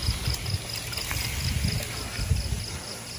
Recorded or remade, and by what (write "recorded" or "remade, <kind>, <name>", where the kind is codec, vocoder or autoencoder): recorded